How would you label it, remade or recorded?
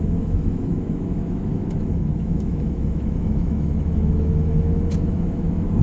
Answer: remade